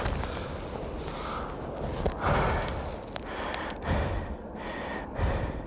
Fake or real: real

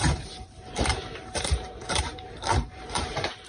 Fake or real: fake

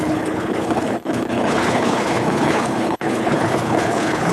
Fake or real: fake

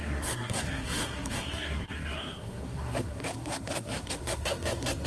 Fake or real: fake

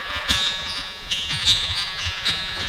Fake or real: fake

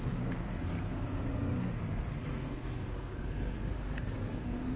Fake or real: fake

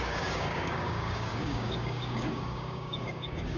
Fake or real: fake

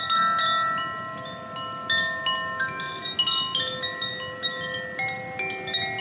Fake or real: real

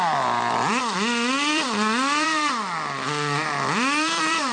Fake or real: fake